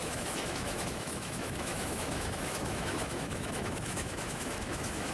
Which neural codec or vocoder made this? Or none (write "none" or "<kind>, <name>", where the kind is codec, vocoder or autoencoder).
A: autoencoder, DAC-VAE